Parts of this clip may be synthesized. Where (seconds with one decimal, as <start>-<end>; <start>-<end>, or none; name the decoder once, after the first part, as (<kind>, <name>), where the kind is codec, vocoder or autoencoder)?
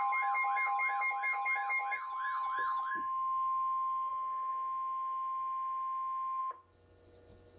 none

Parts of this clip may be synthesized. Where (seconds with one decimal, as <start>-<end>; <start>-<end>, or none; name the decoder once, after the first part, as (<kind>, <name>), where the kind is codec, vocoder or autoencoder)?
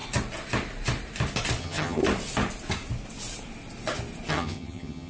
1.6-2.0 (vocoder, HiFi-GAN); 4.3-5.1